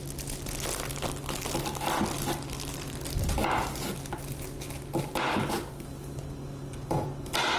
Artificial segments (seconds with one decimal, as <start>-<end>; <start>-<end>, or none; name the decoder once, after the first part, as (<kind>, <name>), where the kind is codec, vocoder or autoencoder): none